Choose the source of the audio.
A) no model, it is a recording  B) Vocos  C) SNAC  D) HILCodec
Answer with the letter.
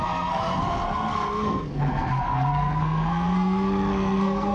C